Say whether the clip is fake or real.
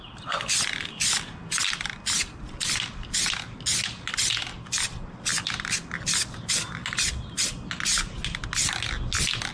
real